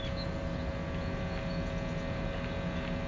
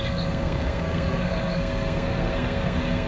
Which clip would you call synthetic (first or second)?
second